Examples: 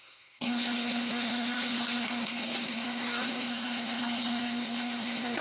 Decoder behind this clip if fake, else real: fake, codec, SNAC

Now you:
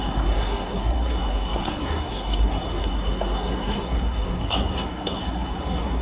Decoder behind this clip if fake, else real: fake, codec, SNAC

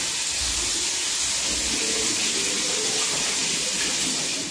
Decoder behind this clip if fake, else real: real